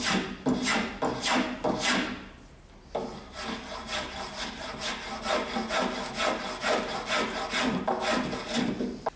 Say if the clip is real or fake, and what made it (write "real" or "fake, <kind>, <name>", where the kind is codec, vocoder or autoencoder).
real